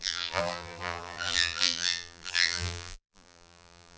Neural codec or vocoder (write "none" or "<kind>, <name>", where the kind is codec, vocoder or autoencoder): vocoder, BigVGAN v2